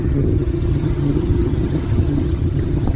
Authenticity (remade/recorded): remade